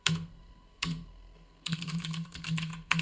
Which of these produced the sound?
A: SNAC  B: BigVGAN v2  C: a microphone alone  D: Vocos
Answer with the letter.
A